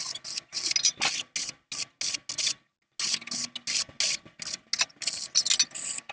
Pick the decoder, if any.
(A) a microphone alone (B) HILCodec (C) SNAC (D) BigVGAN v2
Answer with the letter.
A